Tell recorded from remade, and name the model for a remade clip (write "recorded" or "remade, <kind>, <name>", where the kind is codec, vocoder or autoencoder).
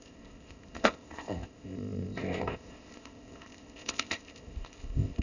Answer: remade, codec, ZipCodec